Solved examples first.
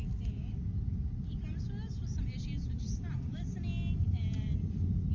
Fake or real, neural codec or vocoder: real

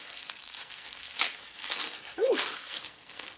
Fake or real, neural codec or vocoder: fake, codec, SNAC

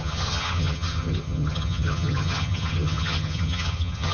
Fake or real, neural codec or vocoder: fake, vocoder, HiFi-GAN